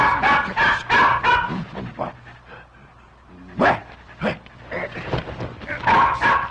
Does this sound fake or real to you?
real